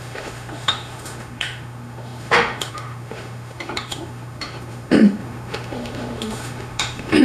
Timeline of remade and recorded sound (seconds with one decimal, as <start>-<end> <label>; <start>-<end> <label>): 0.0-7.2 remade